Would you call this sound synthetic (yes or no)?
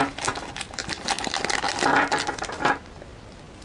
no